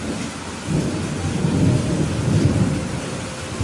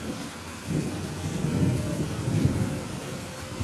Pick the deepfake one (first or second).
second